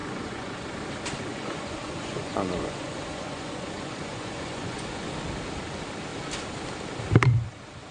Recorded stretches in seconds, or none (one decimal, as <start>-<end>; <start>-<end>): 0.7-1.3; 5.1-7.9